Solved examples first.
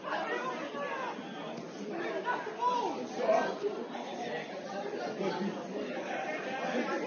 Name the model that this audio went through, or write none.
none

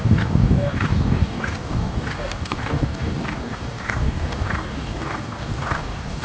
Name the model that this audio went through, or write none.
codec, DAC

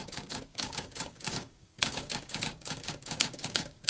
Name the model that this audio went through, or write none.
codec, DAC